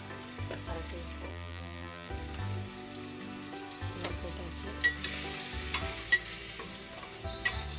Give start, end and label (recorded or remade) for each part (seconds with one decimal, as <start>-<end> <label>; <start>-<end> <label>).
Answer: 0.0-1.3 recorded; 1.3-2.1 remade; 2.1-7.8 recorded